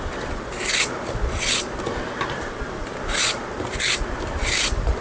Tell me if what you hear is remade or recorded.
recorded